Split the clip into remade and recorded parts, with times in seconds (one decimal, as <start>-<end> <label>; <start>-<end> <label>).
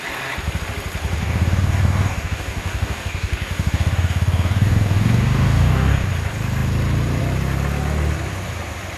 0.0-1.2 recorded; 1.2-6.1 remade; 6.1-9.0 recorded